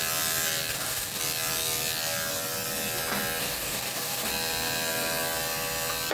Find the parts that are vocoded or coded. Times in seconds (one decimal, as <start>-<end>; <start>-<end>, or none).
0.7-1.2; 3.4-4.3